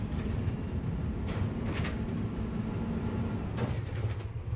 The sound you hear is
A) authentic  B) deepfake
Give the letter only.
A